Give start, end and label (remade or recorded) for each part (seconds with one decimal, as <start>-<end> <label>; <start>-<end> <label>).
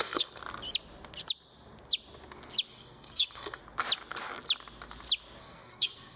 0.0-0.4 remade; 0.4-2.7 recorded; 2.7-3.6 remade; 3.6-5.4 recorded; 5.4-6.2 remade